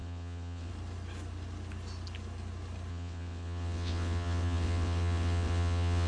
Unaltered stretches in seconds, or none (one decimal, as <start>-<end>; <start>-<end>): 0.7-2.9